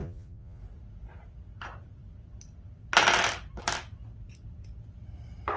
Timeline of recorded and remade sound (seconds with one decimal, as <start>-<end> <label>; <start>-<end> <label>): 0.0-0.6 remade; 0.6-5.6 recorded

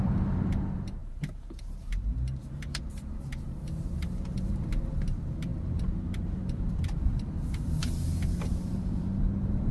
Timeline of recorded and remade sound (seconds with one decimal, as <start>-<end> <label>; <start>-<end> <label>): 0.0-9.7 remade

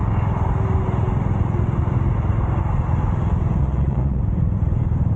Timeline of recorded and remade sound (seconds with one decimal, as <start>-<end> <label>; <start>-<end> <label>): 0.0-3.6 recorded; 3.6-4.2 remade; 4.2-5.2 recorded

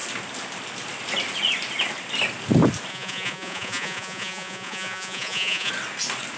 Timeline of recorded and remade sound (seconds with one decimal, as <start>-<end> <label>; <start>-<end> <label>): 0.0-2.9 recorded; 2.9-5.7 remade; 5.7-6.4 recorded

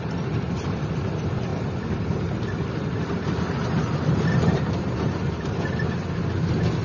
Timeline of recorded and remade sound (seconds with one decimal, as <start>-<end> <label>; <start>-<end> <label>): 0.0-6.8 remade

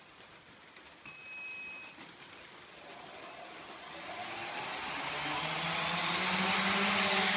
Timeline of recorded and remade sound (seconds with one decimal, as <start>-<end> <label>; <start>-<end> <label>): 0.0-7.4 recorded

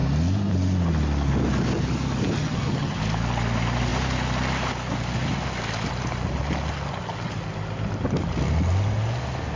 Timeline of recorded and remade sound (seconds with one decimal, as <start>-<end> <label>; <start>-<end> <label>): 0.0-2.4 recorded; 2.4-3.0 remade; 3.0-9.6 recorded

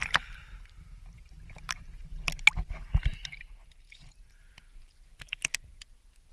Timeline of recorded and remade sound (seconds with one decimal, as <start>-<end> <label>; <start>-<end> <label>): 0.0-6.3 recorded